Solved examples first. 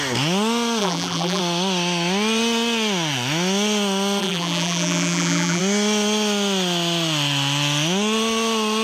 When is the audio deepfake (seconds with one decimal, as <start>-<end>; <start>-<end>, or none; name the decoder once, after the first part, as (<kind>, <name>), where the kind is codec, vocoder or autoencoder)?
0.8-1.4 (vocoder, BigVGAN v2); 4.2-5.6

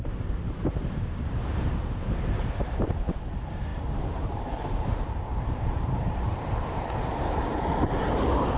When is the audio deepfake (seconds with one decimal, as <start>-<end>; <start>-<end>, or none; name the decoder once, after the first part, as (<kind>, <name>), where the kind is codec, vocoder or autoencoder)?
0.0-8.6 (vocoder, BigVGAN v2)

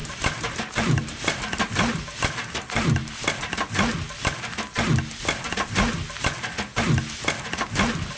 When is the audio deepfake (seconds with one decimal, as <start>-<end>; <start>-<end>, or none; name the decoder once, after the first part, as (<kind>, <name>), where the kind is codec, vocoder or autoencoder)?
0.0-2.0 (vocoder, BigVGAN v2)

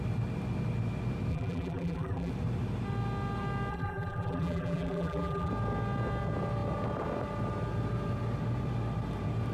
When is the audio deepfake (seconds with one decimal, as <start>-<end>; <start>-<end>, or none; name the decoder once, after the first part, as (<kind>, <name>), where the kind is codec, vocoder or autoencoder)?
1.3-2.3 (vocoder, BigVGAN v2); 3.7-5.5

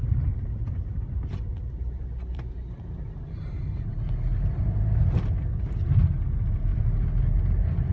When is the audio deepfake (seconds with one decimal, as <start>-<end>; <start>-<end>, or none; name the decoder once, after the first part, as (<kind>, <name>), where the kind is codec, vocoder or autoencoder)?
0.0-3.4 (vocoder, BigVGAN v2)

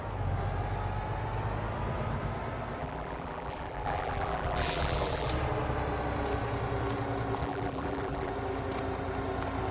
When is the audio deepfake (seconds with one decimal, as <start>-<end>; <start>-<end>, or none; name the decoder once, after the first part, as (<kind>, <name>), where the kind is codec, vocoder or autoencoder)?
2.8-5.3 (vocoder, BigVGAN v2); 7.4-8.3